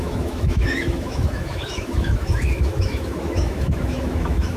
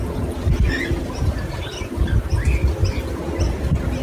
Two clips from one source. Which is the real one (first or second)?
second